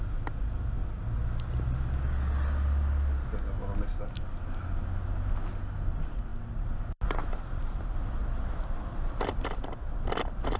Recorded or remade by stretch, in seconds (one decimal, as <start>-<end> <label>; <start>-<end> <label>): 0.0-10.6 recorded